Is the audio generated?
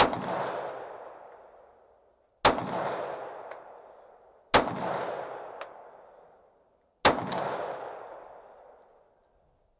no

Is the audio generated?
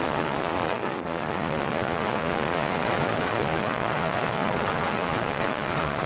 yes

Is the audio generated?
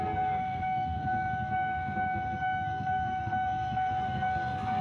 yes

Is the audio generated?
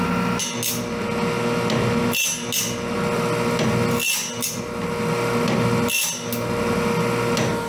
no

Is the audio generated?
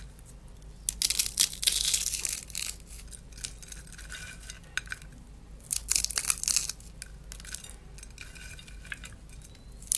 no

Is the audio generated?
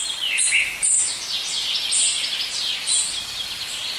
no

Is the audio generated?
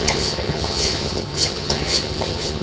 yes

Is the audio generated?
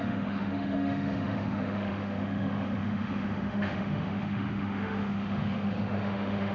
yes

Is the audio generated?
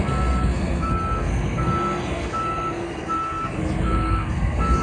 yes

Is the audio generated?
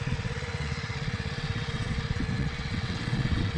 yes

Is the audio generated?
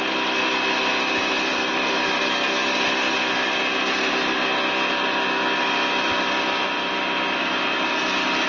no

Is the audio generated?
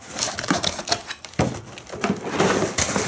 no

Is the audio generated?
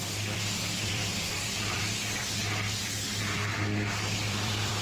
yes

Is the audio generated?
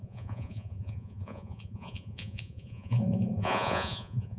yes